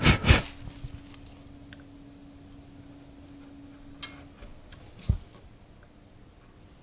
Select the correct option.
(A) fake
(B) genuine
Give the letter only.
B